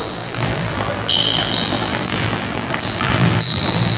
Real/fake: fake